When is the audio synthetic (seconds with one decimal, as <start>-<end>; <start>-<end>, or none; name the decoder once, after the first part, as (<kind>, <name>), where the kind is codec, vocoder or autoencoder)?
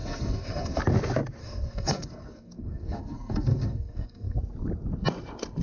0.0-0.8 (codec, SNAC); 1.4-4.4